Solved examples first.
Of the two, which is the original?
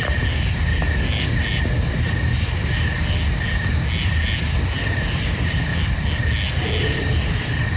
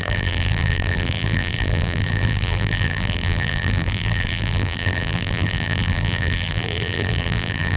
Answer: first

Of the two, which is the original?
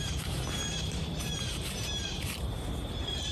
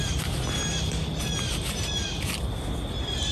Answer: second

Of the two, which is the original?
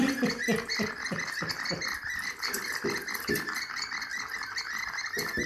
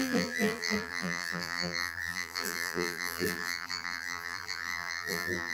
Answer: first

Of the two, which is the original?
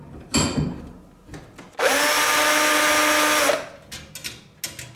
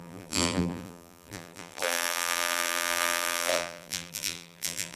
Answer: first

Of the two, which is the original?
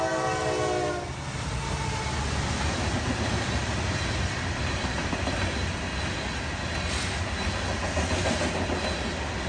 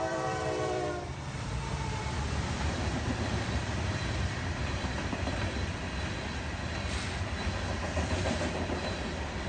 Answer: first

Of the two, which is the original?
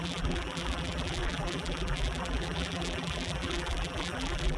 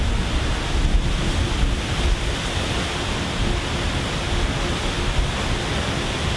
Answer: second